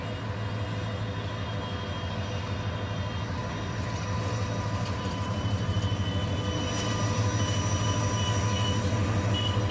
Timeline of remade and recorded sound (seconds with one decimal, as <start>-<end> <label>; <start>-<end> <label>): 0.0-3.4 recorded; 3.4-5.8 remade; 5.8-9.7 recorded